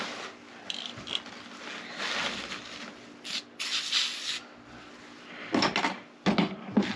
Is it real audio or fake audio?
real